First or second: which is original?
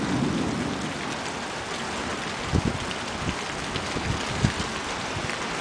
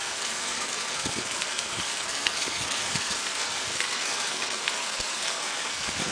first